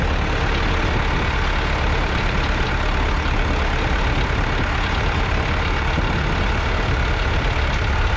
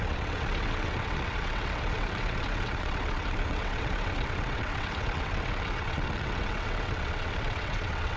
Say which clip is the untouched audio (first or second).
first